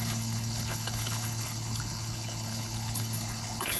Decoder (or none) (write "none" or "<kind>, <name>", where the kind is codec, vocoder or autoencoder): codec, HILCodec